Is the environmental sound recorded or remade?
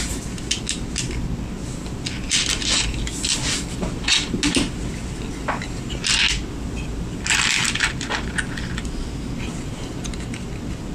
recorded